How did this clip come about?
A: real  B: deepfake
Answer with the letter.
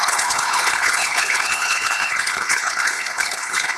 B